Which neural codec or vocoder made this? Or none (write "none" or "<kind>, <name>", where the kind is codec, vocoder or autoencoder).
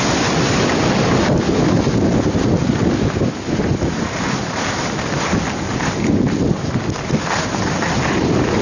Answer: none